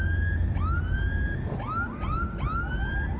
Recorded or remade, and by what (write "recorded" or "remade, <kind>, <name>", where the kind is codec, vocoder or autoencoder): recorded